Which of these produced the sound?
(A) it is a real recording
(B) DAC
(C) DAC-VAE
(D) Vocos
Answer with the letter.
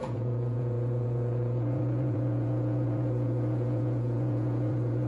D